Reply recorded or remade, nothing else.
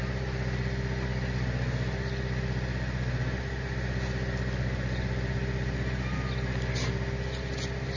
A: recorded